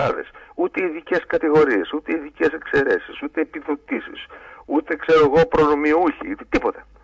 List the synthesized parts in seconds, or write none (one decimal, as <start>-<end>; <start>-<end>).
0.0-1.4; 3.1-5.1